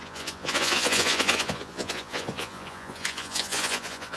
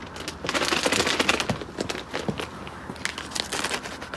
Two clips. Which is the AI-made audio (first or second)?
first